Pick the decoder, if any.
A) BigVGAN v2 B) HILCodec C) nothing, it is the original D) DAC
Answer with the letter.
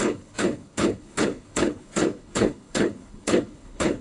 B